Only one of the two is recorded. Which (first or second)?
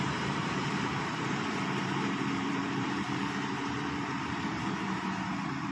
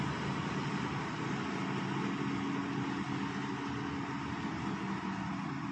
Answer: second